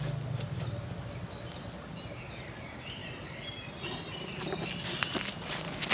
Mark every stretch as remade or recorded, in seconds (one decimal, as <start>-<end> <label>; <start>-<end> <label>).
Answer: 0.0-5.9 recorded